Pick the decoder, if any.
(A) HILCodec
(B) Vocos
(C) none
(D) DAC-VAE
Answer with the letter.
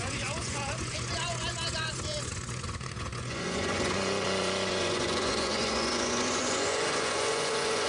B